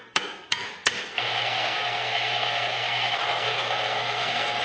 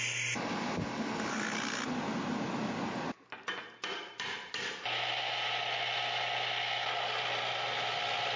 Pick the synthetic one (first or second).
first